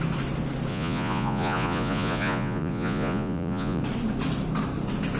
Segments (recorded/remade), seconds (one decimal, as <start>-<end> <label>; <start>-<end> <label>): 0.0-0.7 recorded; 0.7-3.8 remade; 3.8-5.2 recorded